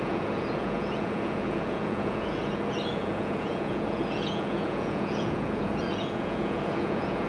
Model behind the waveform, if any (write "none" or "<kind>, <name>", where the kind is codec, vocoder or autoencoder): vocoder, Vocos